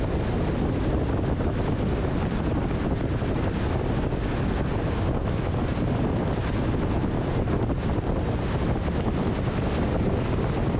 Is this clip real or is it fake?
real